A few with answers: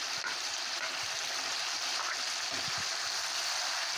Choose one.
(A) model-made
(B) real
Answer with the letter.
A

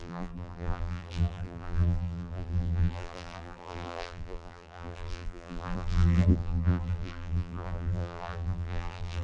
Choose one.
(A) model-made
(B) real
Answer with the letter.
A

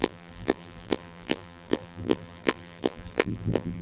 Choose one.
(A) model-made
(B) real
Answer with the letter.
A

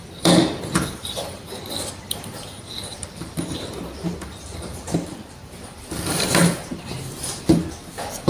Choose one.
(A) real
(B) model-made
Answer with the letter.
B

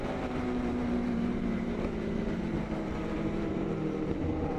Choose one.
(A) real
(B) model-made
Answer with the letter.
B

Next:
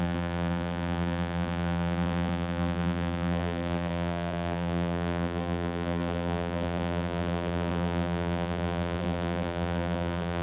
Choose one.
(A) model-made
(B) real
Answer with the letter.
A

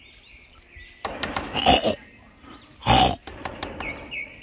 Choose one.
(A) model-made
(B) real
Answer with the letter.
B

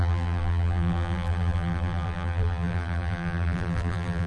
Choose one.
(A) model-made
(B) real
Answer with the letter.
A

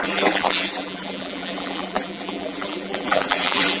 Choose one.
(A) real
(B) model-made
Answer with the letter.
B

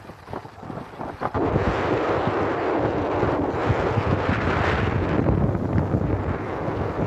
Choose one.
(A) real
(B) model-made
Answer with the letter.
A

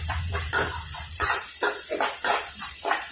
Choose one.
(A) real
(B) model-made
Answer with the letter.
B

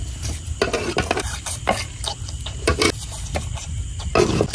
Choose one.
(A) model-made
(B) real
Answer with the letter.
B